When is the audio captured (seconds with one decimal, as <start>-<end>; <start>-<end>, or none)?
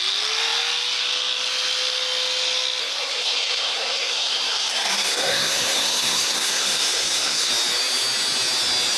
0.0-2.8; 7.5-9.0